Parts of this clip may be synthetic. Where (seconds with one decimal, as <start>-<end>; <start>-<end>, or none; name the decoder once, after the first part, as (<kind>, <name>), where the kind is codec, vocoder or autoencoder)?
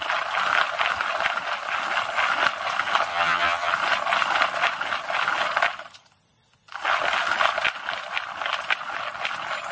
3.1-3.7 (vocoder, HiFi-GAN)